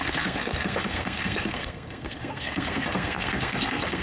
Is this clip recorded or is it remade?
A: remade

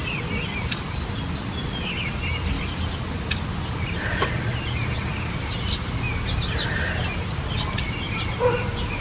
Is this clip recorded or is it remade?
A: recorded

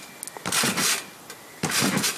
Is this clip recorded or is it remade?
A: recorded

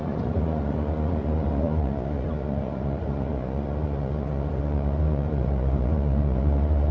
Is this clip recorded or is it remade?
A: remade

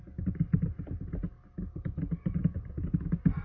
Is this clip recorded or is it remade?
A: recorded